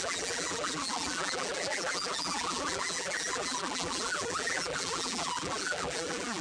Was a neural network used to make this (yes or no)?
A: yes